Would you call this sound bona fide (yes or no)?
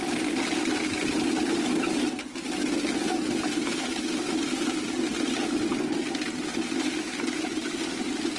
yes